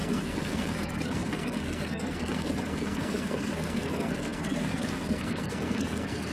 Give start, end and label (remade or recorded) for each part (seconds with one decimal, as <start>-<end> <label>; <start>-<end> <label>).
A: 0.0-6.3 remade